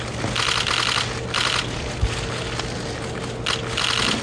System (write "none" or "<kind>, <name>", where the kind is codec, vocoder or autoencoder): none